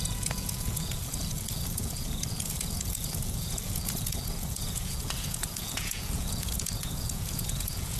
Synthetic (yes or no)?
yes